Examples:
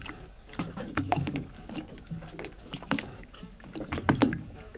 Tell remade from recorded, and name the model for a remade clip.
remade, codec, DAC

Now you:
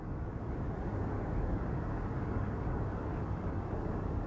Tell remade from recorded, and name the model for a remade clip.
remade, codec, DAC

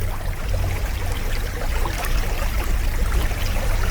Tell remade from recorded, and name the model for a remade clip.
recorded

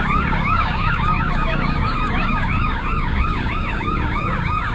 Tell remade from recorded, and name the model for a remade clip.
remade, codec, DAC